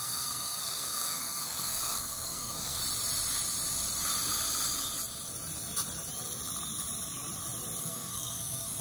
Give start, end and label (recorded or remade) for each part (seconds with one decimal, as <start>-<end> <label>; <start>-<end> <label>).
0.0-2.8 remade; 2.8-7.8 recorded; 7.8-8.8 remade